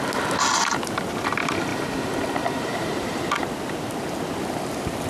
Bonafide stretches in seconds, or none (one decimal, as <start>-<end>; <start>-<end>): 0.0-1.7; 3.2-5.1